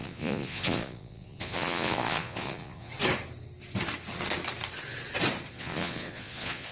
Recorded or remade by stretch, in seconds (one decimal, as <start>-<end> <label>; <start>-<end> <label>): 0.0-2.9 remade; 2.9-5.5 recorded; 5.5-6.7 remade